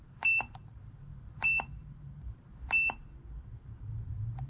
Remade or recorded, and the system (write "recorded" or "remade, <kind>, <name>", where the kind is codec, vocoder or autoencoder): remade, vocoder, BigVGAN v2